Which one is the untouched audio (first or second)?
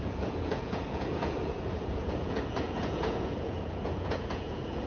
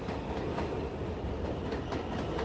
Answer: second